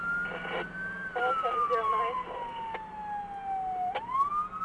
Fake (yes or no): no